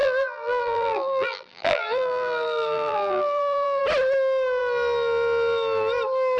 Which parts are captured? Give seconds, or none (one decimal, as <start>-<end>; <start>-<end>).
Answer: 3.8-6.4